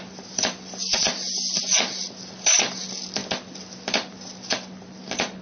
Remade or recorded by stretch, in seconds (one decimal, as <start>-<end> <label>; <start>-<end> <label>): 0.0-5.4 recorded